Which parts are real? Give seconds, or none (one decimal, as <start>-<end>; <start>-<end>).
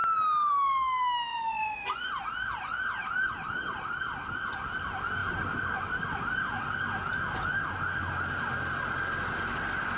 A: 0.0-1.3; 2.2-10.0